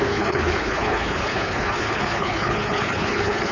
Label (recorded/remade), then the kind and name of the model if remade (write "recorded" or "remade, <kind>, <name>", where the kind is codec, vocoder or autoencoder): remade, codec, HILCodec